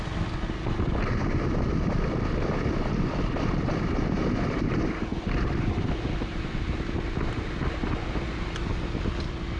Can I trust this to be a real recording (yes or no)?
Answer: yes